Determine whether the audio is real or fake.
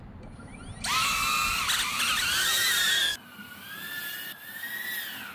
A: real